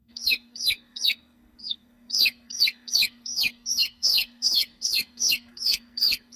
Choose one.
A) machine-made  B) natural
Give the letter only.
A